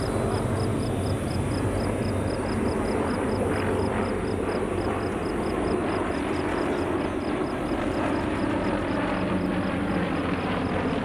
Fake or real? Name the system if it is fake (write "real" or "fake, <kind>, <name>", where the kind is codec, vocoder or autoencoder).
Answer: real